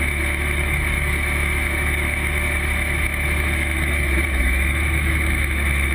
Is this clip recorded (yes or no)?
no